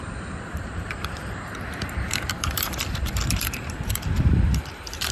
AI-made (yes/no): yes